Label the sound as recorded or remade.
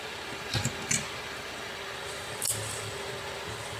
remade